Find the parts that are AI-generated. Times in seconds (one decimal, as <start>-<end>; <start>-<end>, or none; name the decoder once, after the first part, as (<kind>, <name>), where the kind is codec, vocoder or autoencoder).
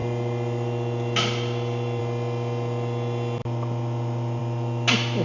none